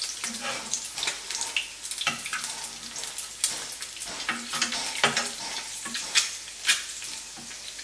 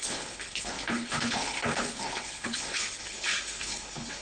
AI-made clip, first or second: second